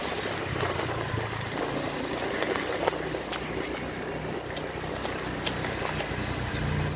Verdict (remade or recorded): recorded